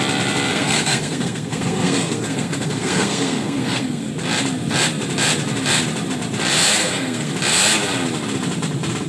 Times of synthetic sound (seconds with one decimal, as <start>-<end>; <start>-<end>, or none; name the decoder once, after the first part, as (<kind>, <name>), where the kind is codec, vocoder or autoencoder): 0.5-4.1 (codec, SNAC); 6.8-7.3